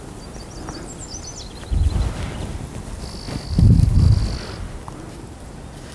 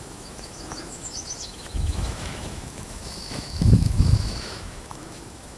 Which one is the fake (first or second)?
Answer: second